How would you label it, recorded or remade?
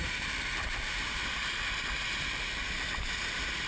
recorded